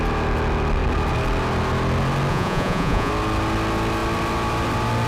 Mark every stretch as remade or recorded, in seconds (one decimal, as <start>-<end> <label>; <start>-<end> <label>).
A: 0.0-2.3 recorded; 2.3-3.1 remade; 3.1-5.1 recorded